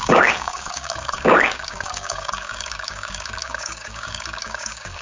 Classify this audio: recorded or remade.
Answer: remade